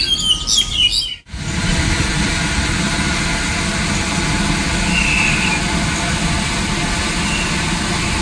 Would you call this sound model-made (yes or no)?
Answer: no